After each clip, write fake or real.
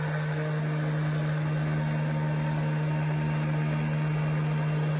real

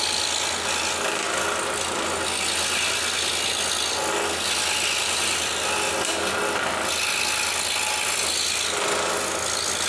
real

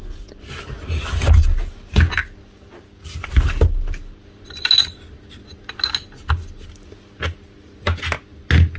real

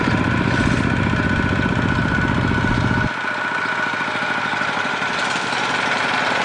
real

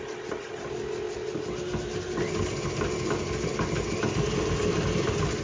real